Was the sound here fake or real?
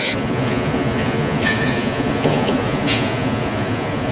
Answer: fake